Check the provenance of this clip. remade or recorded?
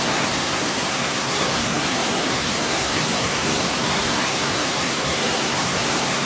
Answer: remade